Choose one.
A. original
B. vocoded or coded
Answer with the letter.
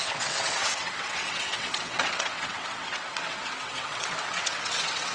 B